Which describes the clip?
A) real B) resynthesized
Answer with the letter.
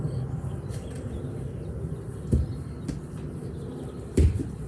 A